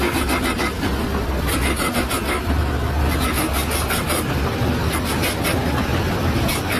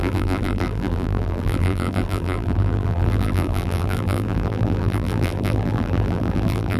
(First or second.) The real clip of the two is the first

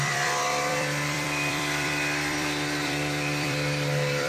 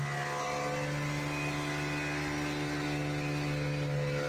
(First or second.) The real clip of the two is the second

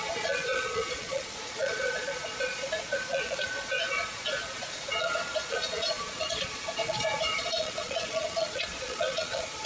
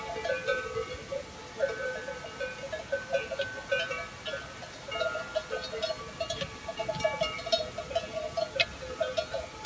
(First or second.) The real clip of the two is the second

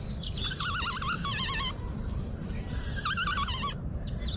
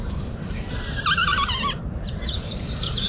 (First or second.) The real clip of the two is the first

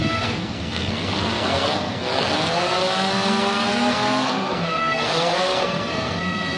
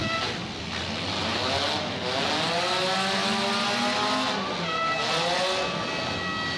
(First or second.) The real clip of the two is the second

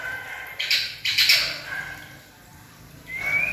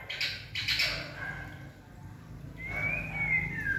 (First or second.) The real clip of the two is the second